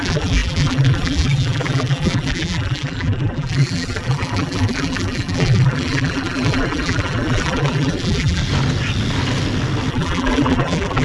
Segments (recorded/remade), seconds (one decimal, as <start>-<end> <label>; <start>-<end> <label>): 0.0-8.4 remade; 8.4-9.9 recorded; 9.9-11.0 remade

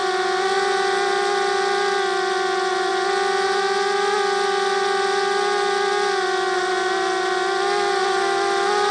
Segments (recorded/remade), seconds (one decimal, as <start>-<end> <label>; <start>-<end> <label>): 0.0-8.9 recorded

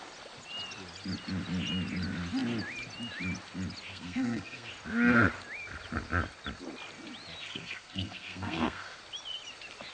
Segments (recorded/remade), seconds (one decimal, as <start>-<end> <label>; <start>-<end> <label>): 0.0-3.9 recorded; 3.9-4.7 remade; 4.7-7.4 recorded; 7.4-9.0 remade; 9.0-9.9 recorded